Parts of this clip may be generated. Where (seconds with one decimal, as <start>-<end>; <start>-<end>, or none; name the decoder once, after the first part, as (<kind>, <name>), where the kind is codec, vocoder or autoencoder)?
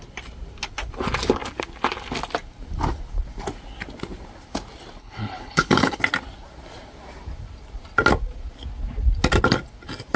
5.0-6.0 (codec, HILCodec)